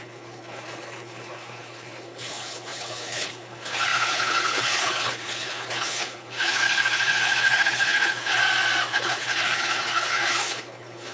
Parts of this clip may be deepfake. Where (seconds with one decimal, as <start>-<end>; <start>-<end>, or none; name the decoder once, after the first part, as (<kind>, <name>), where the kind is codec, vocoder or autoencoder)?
0.0-8.4 (codec, HILCodec); 8.9-11.1